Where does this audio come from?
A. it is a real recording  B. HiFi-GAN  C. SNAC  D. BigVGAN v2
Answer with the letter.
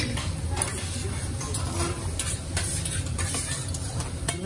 A